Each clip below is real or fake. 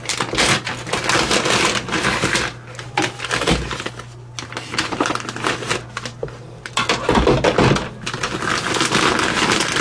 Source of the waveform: real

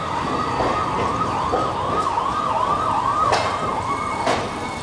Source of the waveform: real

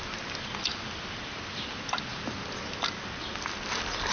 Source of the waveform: real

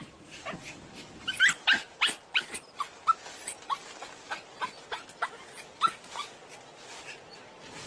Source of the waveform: real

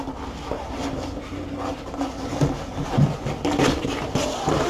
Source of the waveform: real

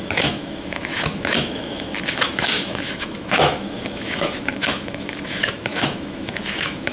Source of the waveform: fake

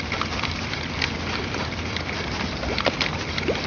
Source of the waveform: real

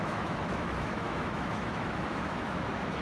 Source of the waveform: fake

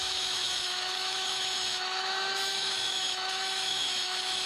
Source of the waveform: fake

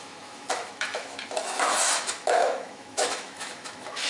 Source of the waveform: fake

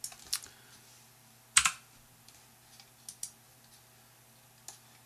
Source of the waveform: real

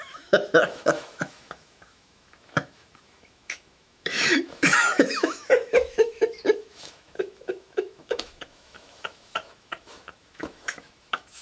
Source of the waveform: fake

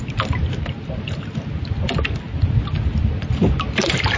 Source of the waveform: real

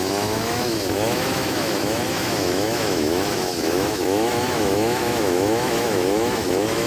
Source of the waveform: fake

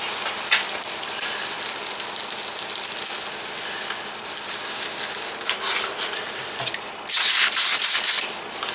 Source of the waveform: real